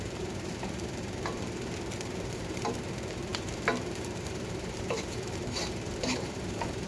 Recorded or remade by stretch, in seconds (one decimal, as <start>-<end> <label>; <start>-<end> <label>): 0.0-6.9 remade